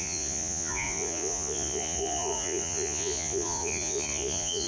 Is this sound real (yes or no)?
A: no